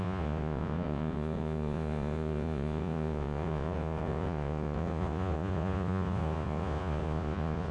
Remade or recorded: remade